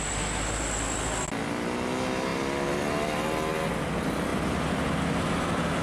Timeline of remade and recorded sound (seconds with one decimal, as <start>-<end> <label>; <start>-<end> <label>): 0.0-5.8 recorded